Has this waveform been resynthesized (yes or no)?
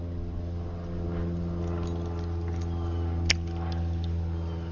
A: no